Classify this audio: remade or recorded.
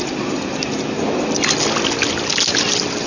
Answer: recorded